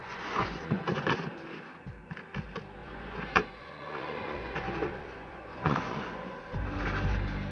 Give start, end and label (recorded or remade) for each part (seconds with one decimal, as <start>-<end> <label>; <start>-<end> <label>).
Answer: 0.0-1.3 remade; 1.3-2.8 recorded; 2.8-6.4 remade; 6.4-7.5 recorded